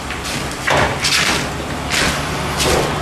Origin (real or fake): real